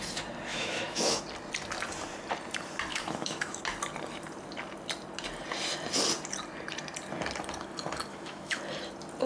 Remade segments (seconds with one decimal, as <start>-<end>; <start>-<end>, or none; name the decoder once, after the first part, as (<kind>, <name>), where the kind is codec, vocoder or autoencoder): 0.5-1.2 (autoencoder, DAC-VAE); 2.9-3.6; 8.1-8.6